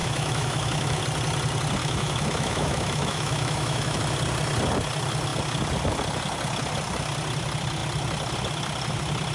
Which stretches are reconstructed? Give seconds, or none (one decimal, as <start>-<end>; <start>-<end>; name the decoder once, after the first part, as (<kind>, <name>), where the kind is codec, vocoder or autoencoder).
0.0-1.0 (autoencoder, DAC-VAE); 1.8-4.0